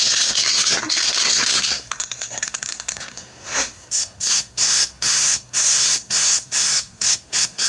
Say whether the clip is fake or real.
fake